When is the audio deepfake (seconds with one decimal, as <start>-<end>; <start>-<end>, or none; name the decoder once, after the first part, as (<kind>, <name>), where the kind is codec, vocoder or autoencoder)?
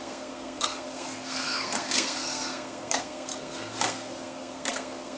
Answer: 0.0-5.2 (codec, SNAC)